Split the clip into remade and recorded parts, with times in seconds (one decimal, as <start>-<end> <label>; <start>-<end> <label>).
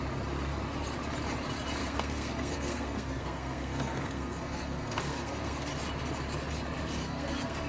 0.0-1.8 recorded; 1.8-5.7 remade; 5.7-7.0 recorded; 7.0-7.7 remade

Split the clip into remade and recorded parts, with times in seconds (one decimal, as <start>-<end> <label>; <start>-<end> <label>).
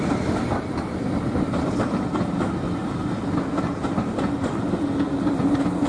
0.0-5.9 recorded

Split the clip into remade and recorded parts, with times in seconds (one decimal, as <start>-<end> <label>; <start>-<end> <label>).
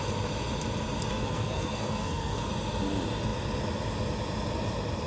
0.0-1.1 recorded; 1.1-2.5 remade; 2.5-5.1 recorded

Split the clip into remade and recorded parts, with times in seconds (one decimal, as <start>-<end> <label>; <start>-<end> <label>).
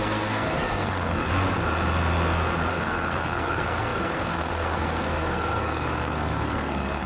0.0-1.3 remade; 1.3-2.7 recorded; 2.7-7.1 remade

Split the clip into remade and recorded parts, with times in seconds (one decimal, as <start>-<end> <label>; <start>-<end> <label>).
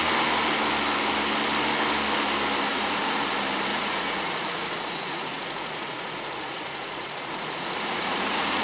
0.0-2.7 recorded; 2.7-3.3 remade; 3.3-3.7 recorded; 3.7-8.6 remade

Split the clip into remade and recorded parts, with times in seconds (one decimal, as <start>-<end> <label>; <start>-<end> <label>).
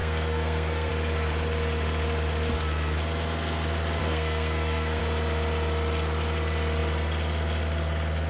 0.0-0.9 remade; 0.9-4.0 recorded; 4.0-5.0 remade; 5.0-8.3 recorded